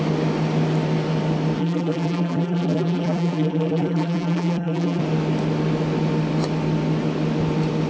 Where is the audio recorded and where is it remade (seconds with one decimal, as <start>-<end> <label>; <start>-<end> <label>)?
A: 0.0-1.6 recorded; 1.6-5.0 remade; 5.0-7.9 recorded